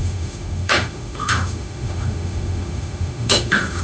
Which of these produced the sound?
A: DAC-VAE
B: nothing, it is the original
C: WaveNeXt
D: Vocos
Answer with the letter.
A